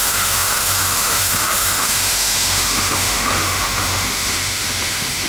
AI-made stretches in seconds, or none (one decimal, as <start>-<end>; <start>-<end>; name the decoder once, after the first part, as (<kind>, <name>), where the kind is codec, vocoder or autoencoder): 0.0-5.3 (autoencoder, DAC-VAE)